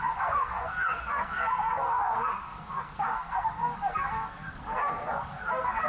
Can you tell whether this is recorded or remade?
remade